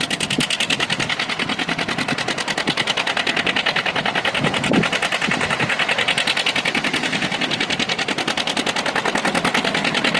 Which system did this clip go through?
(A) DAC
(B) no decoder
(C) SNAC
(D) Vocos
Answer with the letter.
B